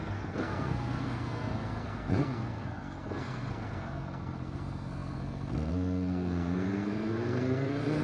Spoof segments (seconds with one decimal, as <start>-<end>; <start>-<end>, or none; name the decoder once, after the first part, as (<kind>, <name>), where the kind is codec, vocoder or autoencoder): 0.0-8.0 (codec, SNAC)